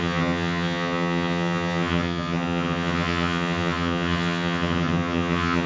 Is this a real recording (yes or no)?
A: no